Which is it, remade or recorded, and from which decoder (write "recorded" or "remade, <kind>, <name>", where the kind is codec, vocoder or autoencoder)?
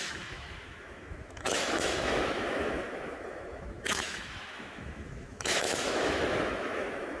remade, autoencoder, DAC-VAE